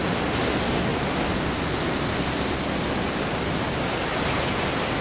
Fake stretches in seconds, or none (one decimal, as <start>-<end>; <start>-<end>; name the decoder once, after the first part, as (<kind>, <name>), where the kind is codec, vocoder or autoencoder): none